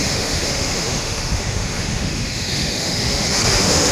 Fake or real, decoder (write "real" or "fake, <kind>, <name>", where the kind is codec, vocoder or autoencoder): fake, autoencoder, DAC-VAE